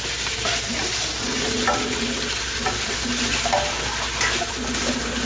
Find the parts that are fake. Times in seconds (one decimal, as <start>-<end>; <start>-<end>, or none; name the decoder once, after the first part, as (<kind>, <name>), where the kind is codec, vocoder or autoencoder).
none